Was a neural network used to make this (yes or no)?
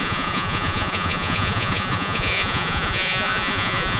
yes